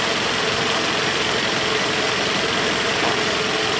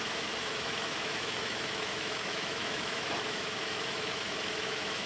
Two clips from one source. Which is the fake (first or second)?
second